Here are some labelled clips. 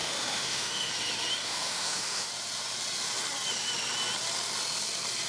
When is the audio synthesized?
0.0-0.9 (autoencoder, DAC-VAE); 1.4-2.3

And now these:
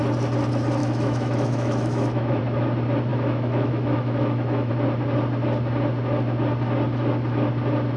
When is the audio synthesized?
0.8-2.4 (autoencoder, DAC-VAE); 3.1-4.7